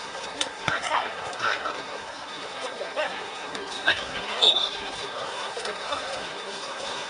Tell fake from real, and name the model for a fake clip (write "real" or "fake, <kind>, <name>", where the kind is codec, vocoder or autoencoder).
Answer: fake, codec, SNAC